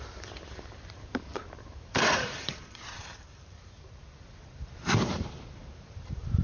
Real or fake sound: fake